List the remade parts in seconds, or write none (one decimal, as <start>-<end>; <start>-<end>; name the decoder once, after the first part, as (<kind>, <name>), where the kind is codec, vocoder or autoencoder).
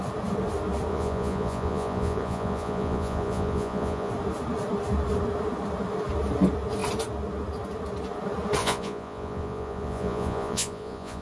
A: 0.9-4.1 (vocoder, Vocos); 8.6-11.2